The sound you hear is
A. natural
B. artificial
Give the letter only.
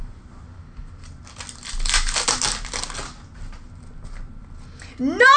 A